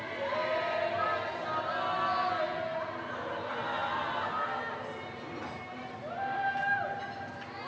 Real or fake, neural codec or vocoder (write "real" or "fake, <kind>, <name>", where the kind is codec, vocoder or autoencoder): real